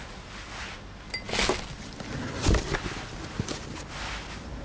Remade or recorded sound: recorded